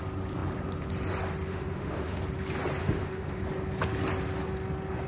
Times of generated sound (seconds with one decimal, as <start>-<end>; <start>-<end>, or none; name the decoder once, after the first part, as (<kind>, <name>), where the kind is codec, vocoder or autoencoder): 1.5-2.2 (autoencoder, DAC-VAE); 2.8-3.4